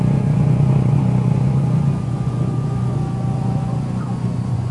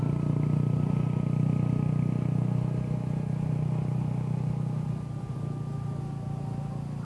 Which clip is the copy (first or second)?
first